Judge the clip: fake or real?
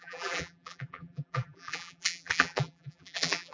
fake